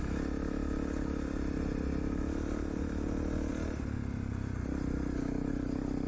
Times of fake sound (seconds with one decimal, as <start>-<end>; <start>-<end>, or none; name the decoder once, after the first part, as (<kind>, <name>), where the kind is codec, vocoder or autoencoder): none